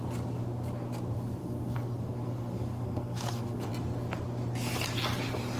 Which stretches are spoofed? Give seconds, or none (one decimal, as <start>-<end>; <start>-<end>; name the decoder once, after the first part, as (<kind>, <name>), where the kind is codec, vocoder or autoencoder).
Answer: 1.4-3.7 (codec, SNAC)